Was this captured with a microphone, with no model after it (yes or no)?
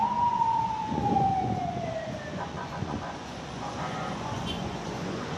no